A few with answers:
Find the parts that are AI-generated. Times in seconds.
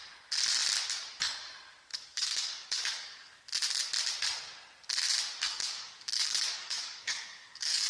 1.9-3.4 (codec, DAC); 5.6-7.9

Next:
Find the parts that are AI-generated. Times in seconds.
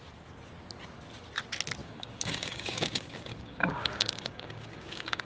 1.8-5.2 (codec, DAC)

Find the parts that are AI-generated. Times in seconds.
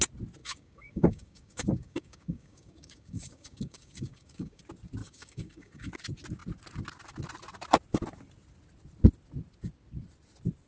0.4-4.6 (codec, DAC); 5.0-5.9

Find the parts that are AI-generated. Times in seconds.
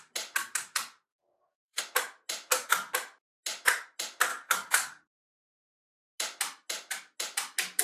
1.1-1.8 (codec, DAC); 4.3-5.5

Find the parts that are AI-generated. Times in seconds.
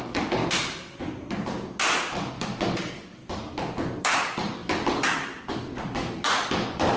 0.0-0.4 (codec, DAC); 2.3-3.2; 4.0-7.0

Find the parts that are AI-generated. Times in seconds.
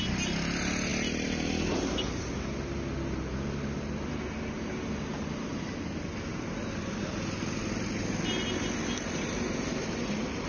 none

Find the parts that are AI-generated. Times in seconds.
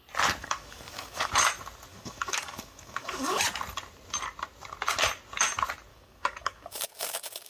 0.4-1.3 (codec, DAC); 1.9-3.4; 5.9-7.5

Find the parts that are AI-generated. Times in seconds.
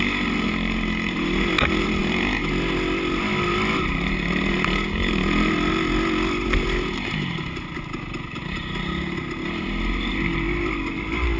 none